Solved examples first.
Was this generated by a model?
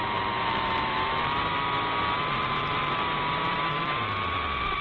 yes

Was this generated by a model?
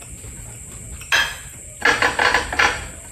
no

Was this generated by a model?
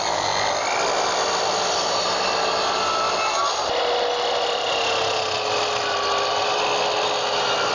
no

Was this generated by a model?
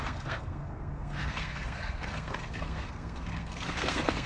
yes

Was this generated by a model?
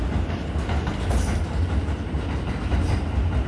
no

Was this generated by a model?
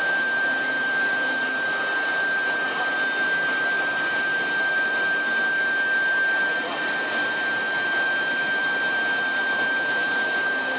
no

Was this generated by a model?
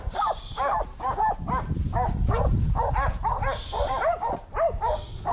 yes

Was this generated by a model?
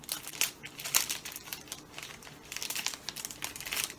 no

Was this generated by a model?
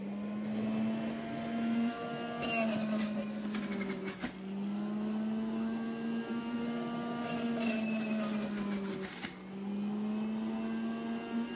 no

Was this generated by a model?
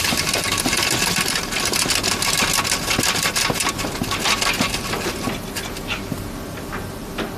no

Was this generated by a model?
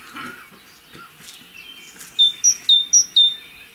no